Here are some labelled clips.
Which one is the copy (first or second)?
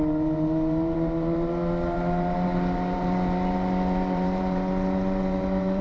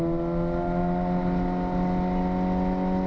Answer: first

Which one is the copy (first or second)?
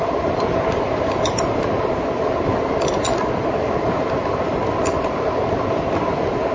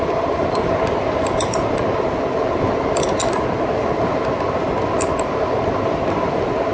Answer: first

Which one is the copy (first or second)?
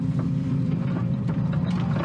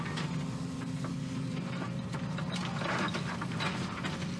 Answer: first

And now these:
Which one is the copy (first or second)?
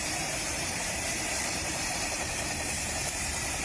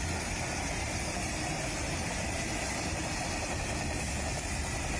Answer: first